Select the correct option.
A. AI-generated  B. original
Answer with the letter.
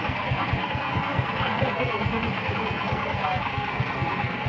A